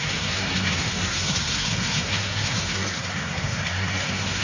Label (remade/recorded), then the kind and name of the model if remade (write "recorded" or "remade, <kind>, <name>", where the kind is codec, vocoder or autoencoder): remade, codec, SNAC